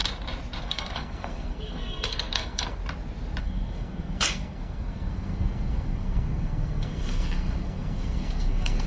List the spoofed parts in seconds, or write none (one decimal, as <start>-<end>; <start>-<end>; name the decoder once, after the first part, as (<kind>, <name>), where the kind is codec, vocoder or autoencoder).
0.6-2.8 (codec, SNAC); 3.4-8.9